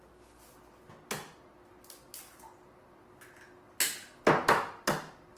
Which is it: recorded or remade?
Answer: recorded